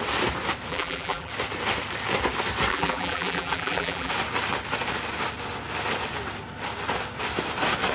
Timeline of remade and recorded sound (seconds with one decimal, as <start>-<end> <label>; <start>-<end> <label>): 0.0-0.7 recorded; 0.7-1.3 remade; 1.3-2.7 recorded; 2.7-4.1 remade; 4.1-7.9 recorded